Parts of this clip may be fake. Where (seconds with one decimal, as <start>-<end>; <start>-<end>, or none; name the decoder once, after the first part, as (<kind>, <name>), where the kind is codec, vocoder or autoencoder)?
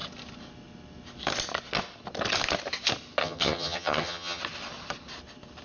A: 3.2-4.4 (vocoder, HiFi-GAN)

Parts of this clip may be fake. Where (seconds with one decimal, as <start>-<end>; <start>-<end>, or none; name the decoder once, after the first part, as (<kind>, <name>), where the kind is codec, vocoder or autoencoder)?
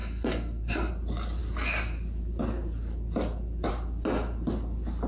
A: 0.0-0.9 (codec, SNAC)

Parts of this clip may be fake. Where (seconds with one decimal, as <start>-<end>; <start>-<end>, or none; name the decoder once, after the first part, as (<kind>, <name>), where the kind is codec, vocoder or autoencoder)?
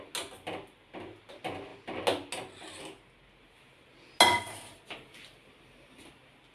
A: none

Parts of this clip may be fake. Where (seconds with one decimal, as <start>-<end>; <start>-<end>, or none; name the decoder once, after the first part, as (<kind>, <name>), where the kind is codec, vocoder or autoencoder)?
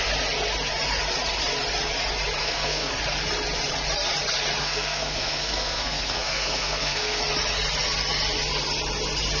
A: 2.4-2.9 (codec, SNAC); 4.6-7.2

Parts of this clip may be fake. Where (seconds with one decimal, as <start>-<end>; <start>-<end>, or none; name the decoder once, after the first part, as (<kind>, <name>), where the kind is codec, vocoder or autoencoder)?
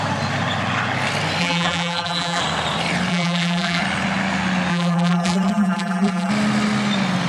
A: 1.4-2.4 (vocoder, BigVGAN v2); 3.1-3.8; 4.7-6.3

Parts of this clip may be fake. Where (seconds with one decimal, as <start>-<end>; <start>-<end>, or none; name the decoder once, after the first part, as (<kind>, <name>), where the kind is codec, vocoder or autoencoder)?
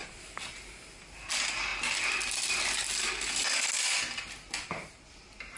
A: none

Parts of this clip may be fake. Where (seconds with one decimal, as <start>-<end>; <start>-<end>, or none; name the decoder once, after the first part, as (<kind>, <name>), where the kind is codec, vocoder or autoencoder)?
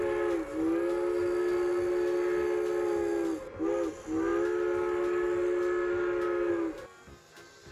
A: none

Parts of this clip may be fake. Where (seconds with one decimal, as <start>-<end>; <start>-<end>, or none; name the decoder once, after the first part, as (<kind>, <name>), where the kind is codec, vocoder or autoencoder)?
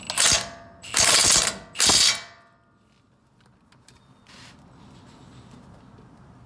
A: none